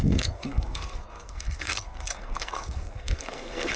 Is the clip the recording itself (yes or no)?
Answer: no